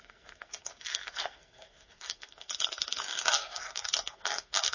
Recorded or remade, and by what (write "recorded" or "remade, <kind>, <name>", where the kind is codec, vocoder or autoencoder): remade, codec, SNAC